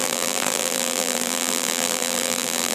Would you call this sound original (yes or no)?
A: no